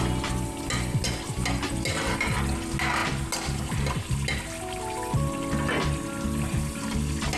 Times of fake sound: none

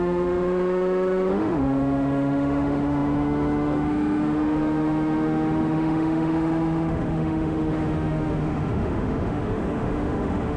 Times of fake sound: 0.0-10.6 (autoencoder, DAC-VAE)